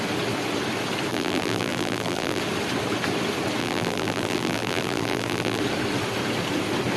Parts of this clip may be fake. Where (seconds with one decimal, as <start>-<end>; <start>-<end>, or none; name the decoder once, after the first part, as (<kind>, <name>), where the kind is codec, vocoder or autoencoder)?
1.1-2.4 (vocoder, BigVGAN v2); 3.6-5.6